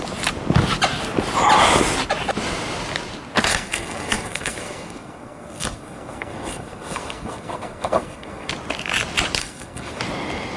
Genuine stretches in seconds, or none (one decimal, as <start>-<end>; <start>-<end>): 0.0-3.5; 8.5-9.4; 10.0-10.6